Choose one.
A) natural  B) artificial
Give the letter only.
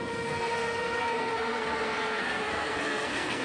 B